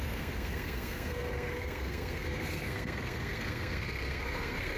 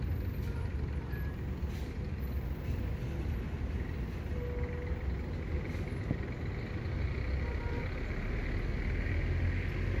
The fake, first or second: first